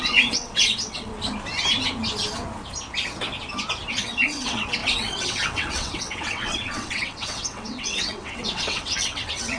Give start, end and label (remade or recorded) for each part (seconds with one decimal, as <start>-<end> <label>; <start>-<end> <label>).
0.0-1.1 remade; 1.1-3.9 recorded; 3.9-9.6 remade